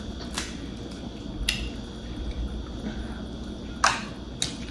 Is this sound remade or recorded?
recorded